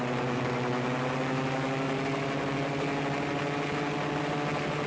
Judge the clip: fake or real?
real